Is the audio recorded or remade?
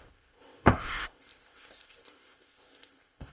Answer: remade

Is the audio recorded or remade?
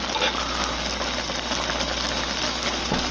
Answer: recorded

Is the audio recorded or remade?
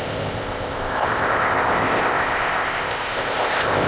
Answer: remade